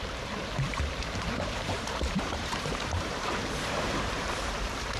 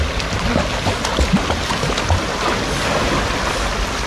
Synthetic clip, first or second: first